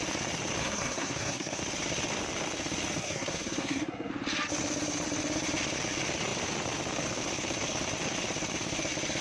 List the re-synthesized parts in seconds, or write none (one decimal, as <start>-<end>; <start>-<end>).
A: 0.6-1.6; 3.0-4.1